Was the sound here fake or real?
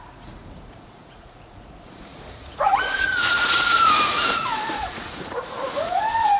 fake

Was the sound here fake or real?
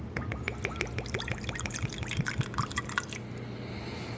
real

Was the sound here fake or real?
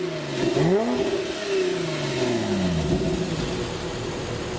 real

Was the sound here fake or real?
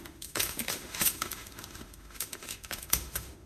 fake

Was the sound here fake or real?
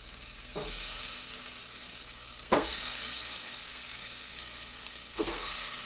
fake